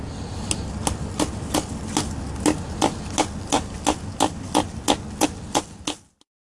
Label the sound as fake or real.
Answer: real